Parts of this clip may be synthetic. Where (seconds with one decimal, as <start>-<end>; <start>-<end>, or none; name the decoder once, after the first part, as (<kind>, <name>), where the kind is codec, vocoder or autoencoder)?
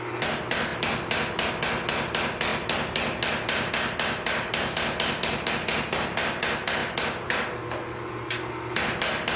none